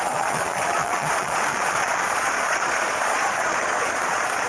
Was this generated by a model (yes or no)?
yes